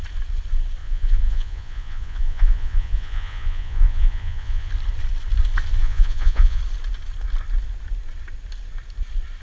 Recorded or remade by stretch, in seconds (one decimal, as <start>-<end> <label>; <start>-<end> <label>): 0.0-0.8 recorded; 0.8-4.7 remade; 4.7-5.8 recorded; 5.8-6.6 remade; 6.6-9.4 recorded